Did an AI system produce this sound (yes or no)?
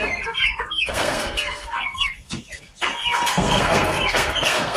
yes